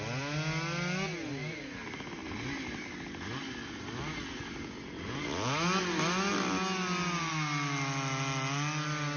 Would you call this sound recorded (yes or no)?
yes